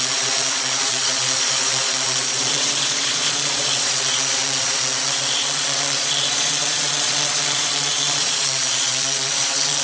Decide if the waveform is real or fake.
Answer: fake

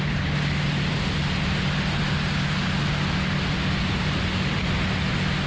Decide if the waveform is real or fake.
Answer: real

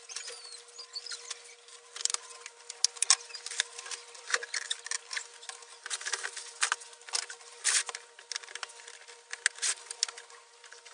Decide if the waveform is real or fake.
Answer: real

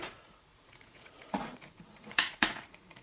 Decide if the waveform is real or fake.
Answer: fake